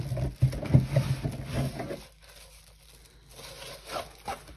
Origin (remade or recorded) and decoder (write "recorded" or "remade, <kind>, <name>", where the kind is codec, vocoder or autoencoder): recorded